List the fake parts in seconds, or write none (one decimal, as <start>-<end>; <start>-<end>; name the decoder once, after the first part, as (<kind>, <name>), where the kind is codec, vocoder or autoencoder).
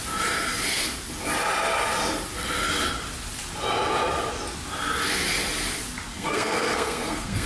6.1-7.5 (codec, SNAC)